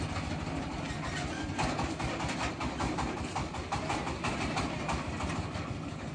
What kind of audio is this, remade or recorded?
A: recorded